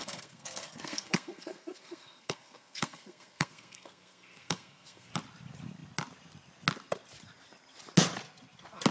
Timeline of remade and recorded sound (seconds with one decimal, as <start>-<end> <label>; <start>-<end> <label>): 0.0-5.1 remade; 5.1-8.9 recorded